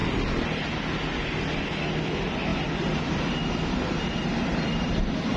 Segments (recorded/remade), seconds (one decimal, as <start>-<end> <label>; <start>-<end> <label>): 0.0-5.4 recorded